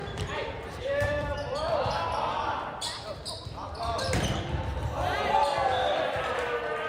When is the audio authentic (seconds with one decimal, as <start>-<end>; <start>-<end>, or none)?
3.9-5.4; 6.0-6.9